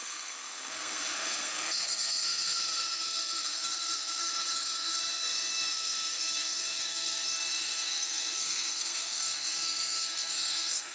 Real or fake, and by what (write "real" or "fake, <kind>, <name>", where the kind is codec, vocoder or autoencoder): fake, codec, SNAC